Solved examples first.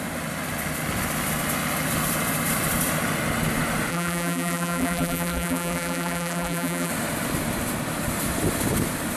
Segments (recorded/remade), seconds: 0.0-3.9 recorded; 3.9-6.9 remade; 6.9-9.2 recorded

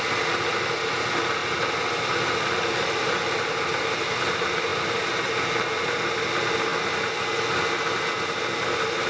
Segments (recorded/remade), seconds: 0.0-9.1 recorded

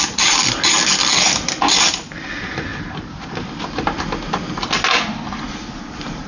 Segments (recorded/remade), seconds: 0.0-6.3 recorded

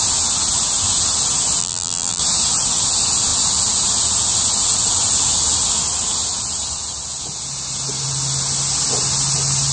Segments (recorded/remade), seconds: 0.0-1.6 recorded; 1.6-2.2 remade; 2.2-9.7 recorded

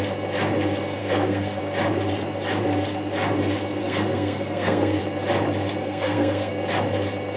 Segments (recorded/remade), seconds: 0.0-1.0 recorded; 1.0-1.6 remade; 1.6-3.8 recorded; 3.8-5.0 remade; 5.0-5.8 recorded; 5.8-6.5 remade; 6.5-7.4 recorded

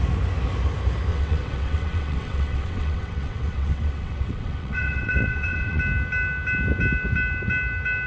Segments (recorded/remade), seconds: 0.0-1.1 recorded; 1.1-5.8 remade; 5.8-8.1 recorded

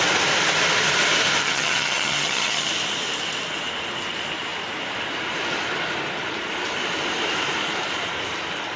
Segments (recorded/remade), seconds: 0.0-1.4 recorded; 1.4-2.7 remade; 2.7-8.8 recorded